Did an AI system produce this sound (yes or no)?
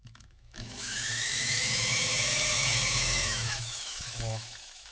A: yes